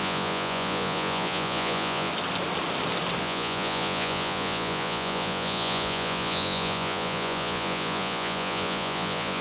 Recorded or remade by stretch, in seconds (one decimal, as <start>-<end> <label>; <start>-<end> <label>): 0.0-2.1 remade; 2.1-3.2 recorded; 3.2-9.4 remade